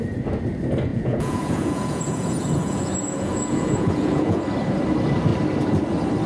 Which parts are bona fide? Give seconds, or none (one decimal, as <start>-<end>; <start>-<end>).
0.0-0.9; 4.4-6.3